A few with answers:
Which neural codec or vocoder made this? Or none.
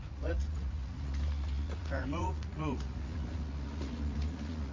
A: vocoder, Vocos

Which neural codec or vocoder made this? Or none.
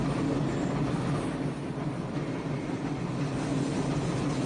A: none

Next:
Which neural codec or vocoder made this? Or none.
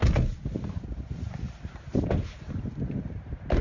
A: none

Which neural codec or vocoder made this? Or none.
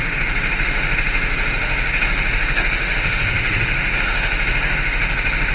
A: autoencoder, DAC-VAE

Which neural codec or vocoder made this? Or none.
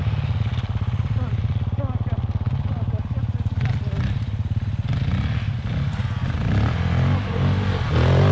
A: none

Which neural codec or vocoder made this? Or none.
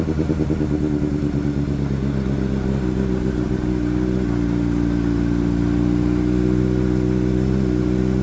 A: none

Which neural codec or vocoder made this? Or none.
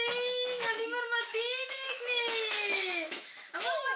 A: autoencoder, DAC-VAE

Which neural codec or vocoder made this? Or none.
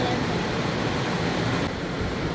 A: none